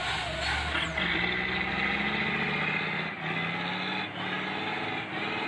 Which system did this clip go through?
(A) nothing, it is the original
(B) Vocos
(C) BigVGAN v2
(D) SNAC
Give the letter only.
A